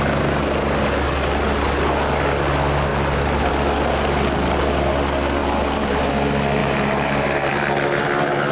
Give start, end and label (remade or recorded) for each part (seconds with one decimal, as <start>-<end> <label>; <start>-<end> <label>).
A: 0.0-2.9 recorded; 2.9-3.5 remade; 3.5-5.4 recorded; 5.4-6.1 remade; 6.1-6.6 recorded; 6.6-7.5 remade; 7.5-8.5 recorded

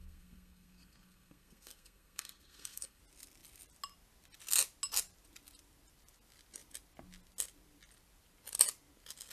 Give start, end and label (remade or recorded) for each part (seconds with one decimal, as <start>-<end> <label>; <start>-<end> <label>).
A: 0.0-3.0 remade; 3.0-9.3 recorded

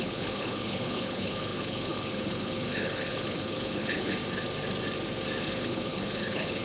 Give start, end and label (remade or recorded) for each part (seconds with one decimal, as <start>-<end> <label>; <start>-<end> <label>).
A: 0.0-4.2 remade; 4.2-5.4 recorded; 5.4-6.6 remade

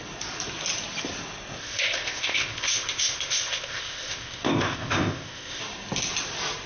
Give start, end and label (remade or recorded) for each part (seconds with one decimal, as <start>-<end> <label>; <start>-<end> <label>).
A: 0.0-1.6 recorded; 1.6-5.6 remade; 5.6-6.7 recorded